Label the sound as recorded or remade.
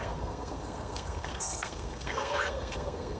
remade